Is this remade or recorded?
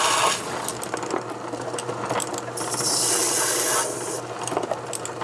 recorded